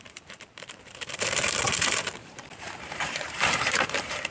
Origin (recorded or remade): remade